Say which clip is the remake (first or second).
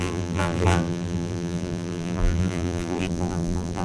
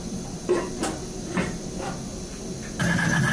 first